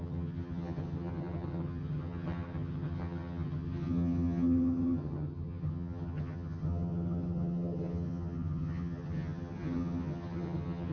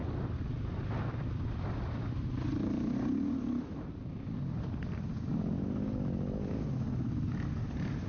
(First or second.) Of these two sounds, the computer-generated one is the first